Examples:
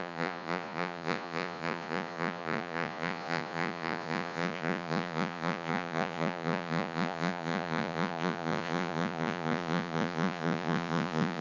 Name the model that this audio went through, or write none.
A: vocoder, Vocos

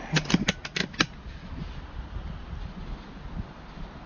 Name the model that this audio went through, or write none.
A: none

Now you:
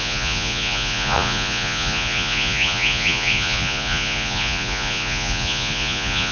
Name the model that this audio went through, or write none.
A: vocoder, Vocos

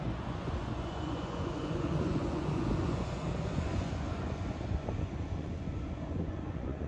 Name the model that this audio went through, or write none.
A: vocoder, Vocos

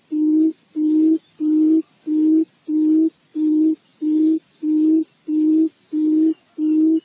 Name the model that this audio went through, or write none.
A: none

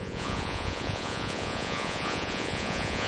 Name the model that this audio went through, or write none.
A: vocoder, Vocos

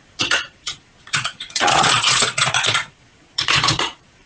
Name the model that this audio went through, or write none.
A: vocoder, Vocos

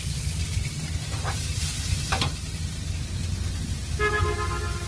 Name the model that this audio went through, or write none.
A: none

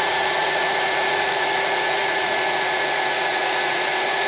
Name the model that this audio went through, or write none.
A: vocoder, Vocos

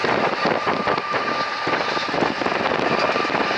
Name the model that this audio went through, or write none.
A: none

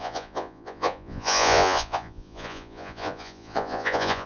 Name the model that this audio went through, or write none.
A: vocoder, Vocos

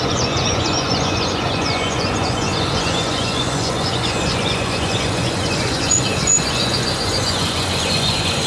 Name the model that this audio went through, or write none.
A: vocoder, Vocos